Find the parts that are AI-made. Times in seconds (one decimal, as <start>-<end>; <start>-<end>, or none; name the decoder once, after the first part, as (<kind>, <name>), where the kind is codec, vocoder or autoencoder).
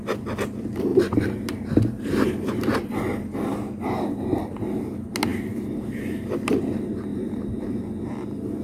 0.9-2.3 (vocoder, BigVGAN v2); 7.1-7.8